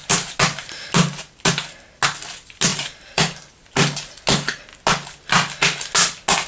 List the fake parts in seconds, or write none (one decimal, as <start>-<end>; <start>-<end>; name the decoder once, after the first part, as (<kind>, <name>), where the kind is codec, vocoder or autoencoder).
2.7-3.5 (vocoder, BigVGAN v2)